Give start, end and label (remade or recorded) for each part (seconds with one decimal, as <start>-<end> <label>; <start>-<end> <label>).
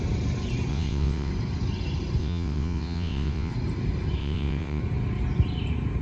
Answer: 0.0-0.7 recorded; 0.7-1.3 remade; 1.3-2.2 recorded; 2.2-3.5 remade; 3.5-4.2 recorded; 4.2-4.8 remade; 4.8-6.0 recorded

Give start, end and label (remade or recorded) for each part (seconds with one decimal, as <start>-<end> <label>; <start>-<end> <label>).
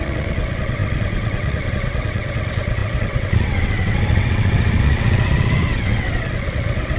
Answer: 0.0-7.0 remade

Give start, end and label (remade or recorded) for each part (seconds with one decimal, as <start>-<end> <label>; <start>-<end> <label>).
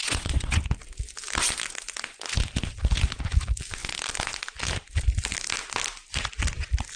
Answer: 0.0-0.6 remade; 0.6-7.0 recorded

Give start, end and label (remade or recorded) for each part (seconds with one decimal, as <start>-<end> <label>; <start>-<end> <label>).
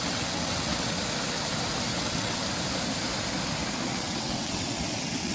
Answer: 0.0-1.0 remade; 1.0-1.9 recorded; 1.9-2.4 remade; 2.4-3.9 recorded; 3.9-5.3 remade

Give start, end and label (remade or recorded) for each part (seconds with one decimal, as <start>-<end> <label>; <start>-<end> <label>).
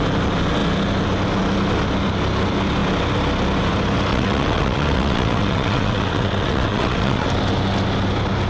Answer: 0.0-4.1 recorded; 4.1-7.3 remade; 7.3-8.5 recorded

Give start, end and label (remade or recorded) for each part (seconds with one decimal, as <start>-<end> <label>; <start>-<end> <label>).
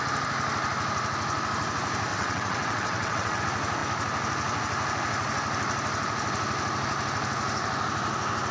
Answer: 0.0-2.1 recorded; 2.1-3.4 remade; 3.4-8.5 recorded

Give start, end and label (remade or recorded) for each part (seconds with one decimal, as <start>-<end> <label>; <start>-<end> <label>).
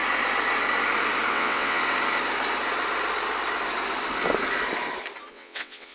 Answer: 0.0-1.3 recorded; 1.3-1.8 remade; 1.8-5.3 recorded; 5.3-5.9 remade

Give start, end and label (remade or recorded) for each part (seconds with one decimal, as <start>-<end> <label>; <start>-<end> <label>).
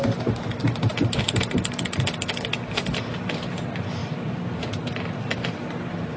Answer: 0.0-6.2 recorded